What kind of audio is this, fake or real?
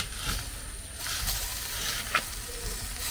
real